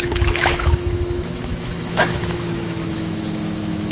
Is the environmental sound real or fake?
fake